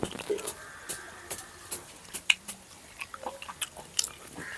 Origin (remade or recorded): recorded